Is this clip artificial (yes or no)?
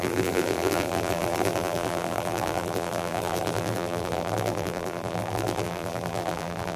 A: yes